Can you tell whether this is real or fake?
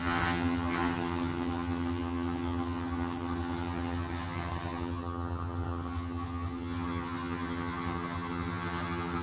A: fake